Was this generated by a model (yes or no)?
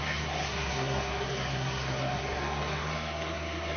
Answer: yes